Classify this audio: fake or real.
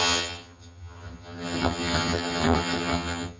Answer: fake